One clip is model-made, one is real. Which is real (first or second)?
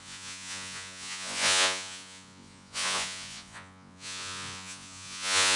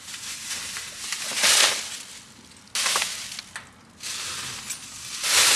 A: second